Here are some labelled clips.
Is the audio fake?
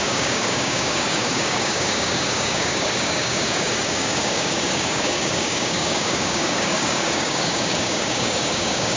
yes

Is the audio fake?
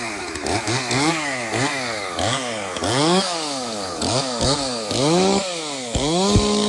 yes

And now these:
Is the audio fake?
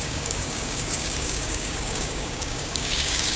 yes